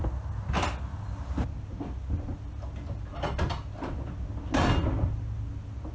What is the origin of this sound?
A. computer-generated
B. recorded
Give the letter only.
B